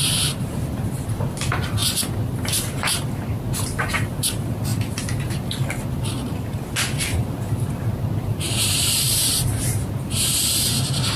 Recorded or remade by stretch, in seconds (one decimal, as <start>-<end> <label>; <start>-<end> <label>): 0.0-8.3 recorded; 8.3-10.0 remade; 10.0-11.2 recorded

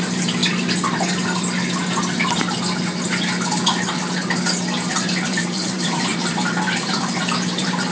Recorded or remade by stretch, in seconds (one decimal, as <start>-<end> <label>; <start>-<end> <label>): 0.0-0.4 remade; 0.4-4.9 recorded; 4.9-7.9 remade

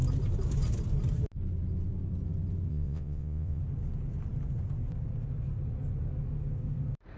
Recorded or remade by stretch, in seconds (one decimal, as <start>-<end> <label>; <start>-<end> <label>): 0.0-2.7 recorded; 2.7-3.6 remade; 3.6-7.2 recorded

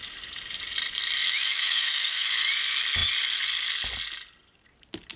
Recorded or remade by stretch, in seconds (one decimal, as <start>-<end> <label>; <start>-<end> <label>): 0.0-1.2 recorded; 1.2-2.3 remade; 2.3-5.2 recorded

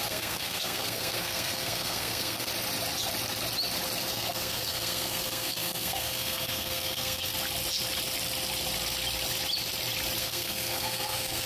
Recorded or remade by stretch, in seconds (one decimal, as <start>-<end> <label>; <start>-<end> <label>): 0.0-2.5 remade; 2.5-4.1 recorded; 4.1-7.3 remade; 7.3-10.2 recorded; 10.2-11.5 remade

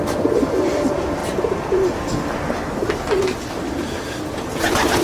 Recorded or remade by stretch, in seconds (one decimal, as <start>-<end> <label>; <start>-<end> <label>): 0.0-1.2 remade; 1.2-4.2 recorded; 4.2-5.0 remade

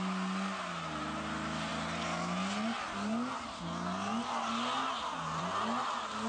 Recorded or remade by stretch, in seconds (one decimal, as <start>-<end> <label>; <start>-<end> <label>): 0.0-6.3 recorded